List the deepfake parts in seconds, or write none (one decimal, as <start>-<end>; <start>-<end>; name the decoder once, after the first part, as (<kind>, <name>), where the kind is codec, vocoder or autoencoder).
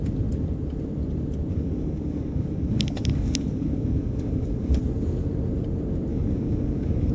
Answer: 1.5-4.8 (codec, DAC); 6.1-7.1